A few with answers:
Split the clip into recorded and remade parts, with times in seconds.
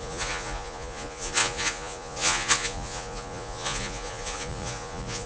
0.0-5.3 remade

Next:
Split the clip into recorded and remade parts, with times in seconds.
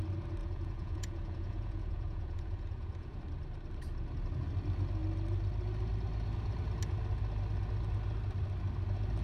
0.0-0.4 recorded; 0.4-3.2 remade; 3.2-9.2 recorded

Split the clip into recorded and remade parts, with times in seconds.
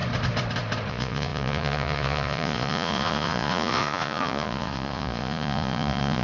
0.0-0.9 recorded; 0.9-6.2 remade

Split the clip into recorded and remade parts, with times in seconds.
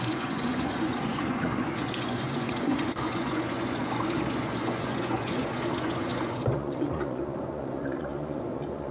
0.0-8.9 remade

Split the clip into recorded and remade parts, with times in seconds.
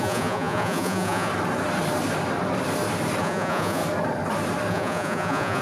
0.0-1.3 remade; 1.3-3.2 recorded; 3.2-3.8 remade; 3.8-4.7 recorded; 4.7-5.6 remade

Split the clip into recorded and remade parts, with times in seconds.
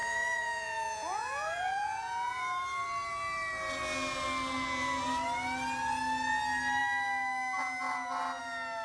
0.0-2.4 remade; 2.4-8.8 recorded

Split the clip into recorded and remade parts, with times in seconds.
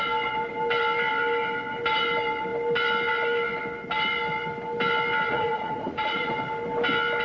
0.0-5.3 recorded; 5.3-6.3 remade; 6.3-7.2 recorded